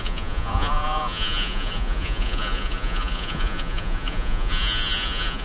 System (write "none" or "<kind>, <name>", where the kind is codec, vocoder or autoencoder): vocoder, Vocos